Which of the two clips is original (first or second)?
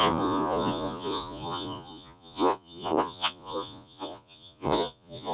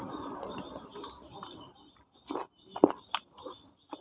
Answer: second